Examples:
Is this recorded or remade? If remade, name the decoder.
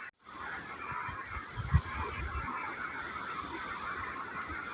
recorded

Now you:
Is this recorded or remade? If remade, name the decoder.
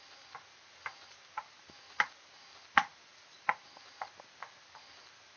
recorded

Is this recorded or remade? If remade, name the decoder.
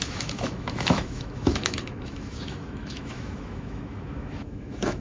remade, autoencoder, DAC-VAE